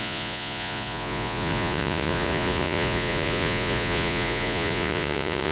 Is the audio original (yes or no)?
no